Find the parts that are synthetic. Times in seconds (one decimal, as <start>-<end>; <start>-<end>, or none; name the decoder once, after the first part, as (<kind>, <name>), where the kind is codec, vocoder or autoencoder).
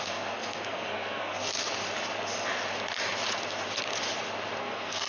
0.0-1.5 (codec, SNAC); 4.6-5.1